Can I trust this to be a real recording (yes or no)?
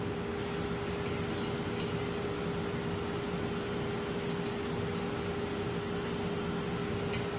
yes